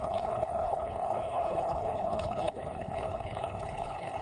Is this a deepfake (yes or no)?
yes